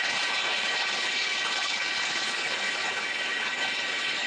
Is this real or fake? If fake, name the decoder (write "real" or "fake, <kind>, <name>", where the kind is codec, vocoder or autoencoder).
fake, codec, HILCodec